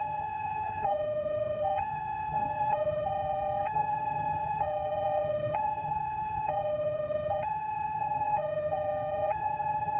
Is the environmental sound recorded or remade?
remade